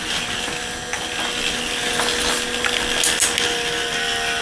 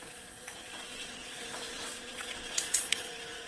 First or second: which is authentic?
first